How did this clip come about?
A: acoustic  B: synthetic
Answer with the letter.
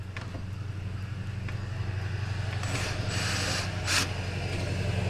A